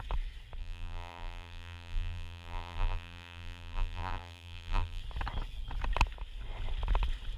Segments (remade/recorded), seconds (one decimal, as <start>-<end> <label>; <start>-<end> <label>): 0.0-0.6 recorded; 0.6-5.0 remade; 5.0-7.4 recorded